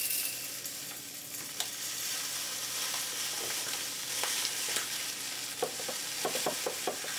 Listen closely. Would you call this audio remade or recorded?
recorded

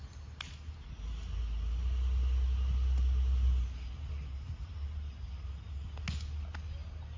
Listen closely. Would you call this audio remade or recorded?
recorded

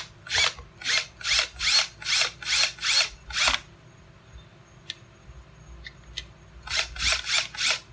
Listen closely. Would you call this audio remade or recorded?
recorded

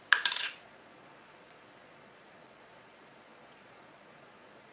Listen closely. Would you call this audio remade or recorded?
remade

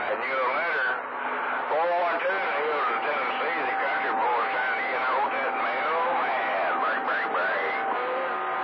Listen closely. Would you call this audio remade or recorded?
recorded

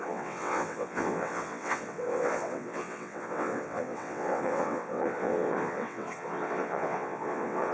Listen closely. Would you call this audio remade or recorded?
remade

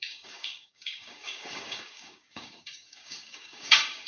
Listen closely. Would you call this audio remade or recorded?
remade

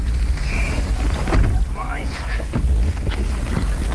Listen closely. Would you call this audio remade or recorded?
recorded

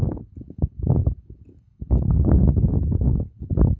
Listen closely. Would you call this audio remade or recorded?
remade